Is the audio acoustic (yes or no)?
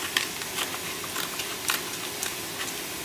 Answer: yes